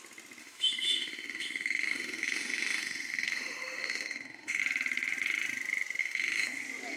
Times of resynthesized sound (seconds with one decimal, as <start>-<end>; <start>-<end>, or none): 0.4-4.6; 6.0-6.6